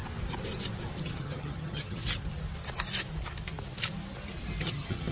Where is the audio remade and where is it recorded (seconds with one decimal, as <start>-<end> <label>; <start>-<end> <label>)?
0.0-1.0 recorded; 1.0-2.0 remade; 2.0-4.6 recorded; 4.6-5.1 remade